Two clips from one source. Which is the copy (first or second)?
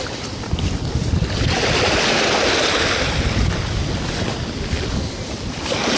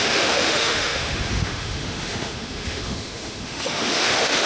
second